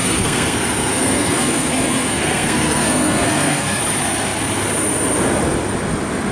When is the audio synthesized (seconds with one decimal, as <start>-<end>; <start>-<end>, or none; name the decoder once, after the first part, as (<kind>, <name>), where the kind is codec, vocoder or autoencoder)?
0.0-3.8 (codec, SNAC)